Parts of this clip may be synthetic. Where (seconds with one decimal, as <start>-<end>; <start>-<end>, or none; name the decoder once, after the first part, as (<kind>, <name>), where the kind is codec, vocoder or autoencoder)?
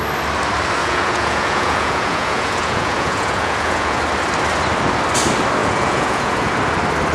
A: 0.8-4.0 (vocoder, Vocos); 5.6-6.5